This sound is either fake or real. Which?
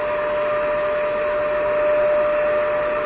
real